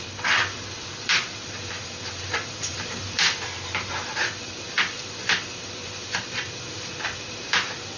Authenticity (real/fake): fake